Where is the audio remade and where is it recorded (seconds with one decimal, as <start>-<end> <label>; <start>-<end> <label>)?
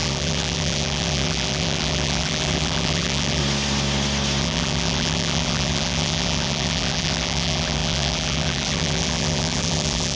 0.0-3.4 remade; 3.4-4.4 recorded; 4.4-10.2 remade